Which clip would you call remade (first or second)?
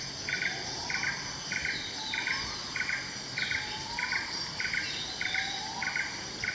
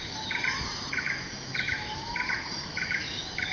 second